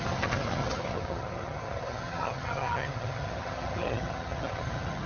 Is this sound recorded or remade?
remade